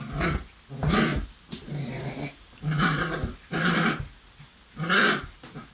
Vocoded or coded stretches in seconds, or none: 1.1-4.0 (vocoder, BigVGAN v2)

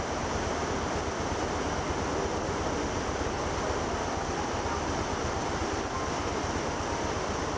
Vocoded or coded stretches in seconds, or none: 5.4-6.0 (vocoder, BigVGAN v2)

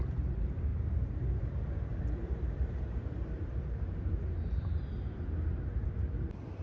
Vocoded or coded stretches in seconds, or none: 0.7-1.4 (vocoder, BigVGAN v2); 1.9-5.9

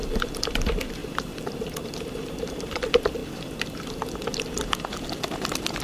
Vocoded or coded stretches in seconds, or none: 1.0-2.5 (vocoder, BigVGAN v2)

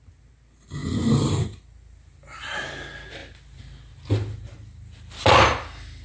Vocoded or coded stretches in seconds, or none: none